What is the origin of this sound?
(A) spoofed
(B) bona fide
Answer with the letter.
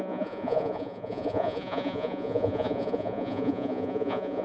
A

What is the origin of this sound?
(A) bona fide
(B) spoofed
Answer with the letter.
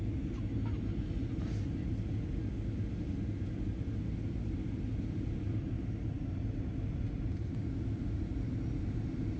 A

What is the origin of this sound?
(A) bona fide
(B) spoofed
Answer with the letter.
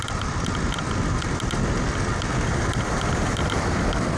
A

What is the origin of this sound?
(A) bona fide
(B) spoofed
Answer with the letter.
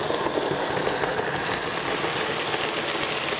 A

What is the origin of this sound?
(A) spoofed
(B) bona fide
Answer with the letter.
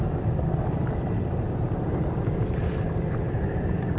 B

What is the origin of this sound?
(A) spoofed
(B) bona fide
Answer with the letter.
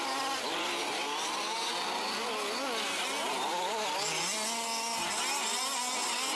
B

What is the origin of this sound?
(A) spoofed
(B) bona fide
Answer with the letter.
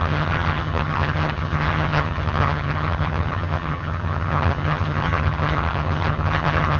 A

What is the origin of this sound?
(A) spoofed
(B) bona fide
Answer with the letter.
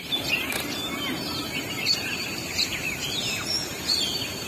A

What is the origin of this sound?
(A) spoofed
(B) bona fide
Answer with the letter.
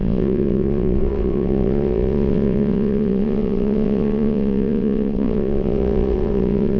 A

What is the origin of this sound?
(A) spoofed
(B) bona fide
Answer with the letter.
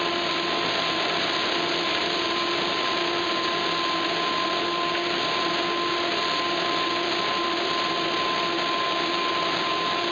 B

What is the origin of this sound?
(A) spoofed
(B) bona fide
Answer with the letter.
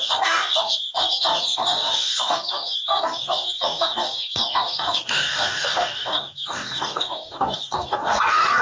A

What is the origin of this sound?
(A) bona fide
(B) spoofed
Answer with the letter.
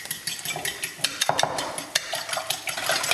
A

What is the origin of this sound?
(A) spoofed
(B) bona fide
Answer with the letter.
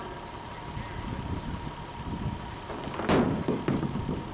B